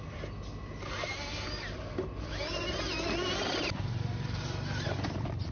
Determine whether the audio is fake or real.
real